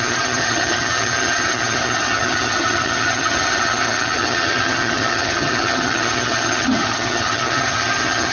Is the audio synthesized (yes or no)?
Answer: yes